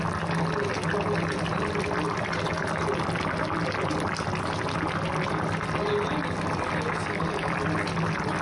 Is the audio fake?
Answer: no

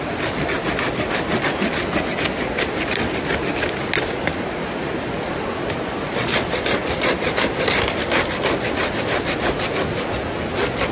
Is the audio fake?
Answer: no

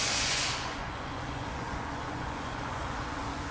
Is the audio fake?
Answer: yes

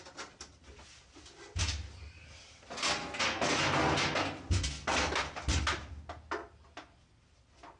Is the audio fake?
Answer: no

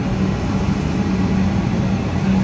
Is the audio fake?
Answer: no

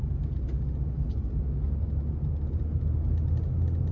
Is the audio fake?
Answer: no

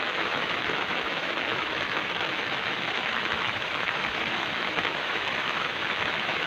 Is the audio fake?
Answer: yes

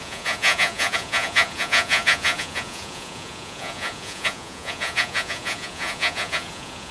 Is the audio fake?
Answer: yes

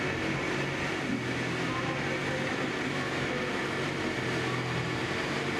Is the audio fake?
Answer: no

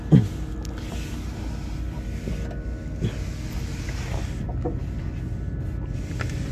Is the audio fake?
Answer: no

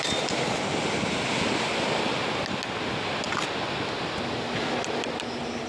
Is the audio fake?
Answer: no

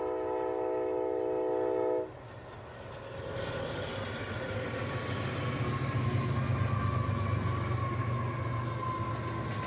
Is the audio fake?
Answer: no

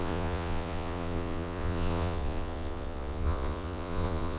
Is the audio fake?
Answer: yes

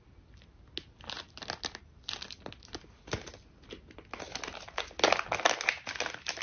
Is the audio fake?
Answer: no